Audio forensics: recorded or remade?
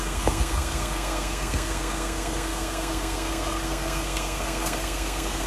remade